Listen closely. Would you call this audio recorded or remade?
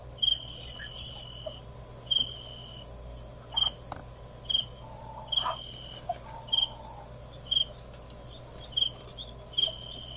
recorded